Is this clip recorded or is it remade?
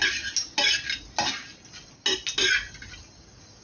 recorded